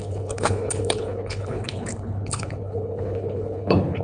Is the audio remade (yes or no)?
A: yes